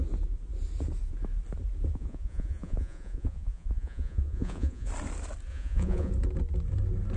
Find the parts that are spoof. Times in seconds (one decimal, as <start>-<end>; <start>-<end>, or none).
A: 1.9-4.9; 5.5-6.1